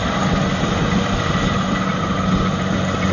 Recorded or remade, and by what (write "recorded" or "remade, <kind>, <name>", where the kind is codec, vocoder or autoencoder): recorded